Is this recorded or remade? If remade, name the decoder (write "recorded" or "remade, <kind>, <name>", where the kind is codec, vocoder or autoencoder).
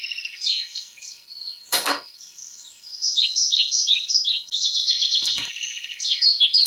remade, codec, SNAC